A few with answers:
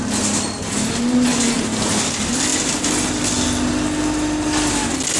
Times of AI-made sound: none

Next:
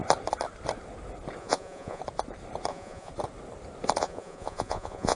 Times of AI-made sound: 1.4-2.0; 2.7-3.1; 4.0-5.2